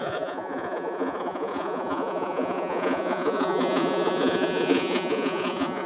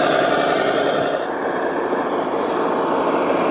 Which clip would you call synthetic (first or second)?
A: first